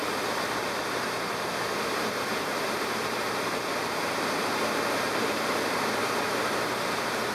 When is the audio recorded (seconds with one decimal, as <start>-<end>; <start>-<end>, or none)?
none

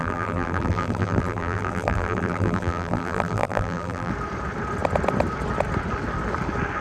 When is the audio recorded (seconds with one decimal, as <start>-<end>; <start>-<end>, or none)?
4.1-6.8

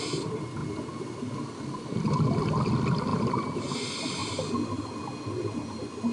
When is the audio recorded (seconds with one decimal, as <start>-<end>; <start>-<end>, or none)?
0.0-3.1; 3.8-4.2; 4.8-6.1

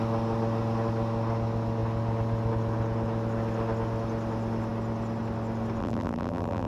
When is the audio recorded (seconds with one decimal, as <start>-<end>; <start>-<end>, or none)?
0.0-5.8

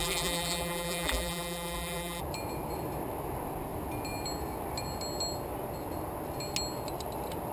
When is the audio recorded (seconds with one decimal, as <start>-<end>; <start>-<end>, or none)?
2.2-7.5

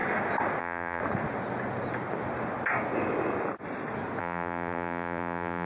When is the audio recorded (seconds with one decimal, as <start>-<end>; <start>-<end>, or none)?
0.0-0.6; 1.0-4.2

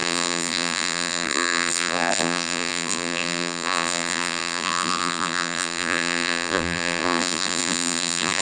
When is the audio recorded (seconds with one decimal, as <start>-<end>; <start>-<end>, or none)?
none

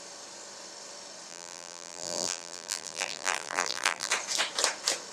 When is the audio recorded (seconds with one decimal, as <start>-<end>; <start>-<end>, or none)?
0.0-1.3; 4.1-5.1